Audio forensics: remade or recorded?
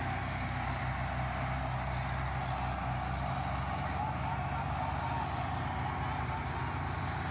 recorded